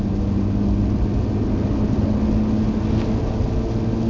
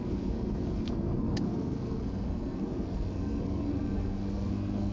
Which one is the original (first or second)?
first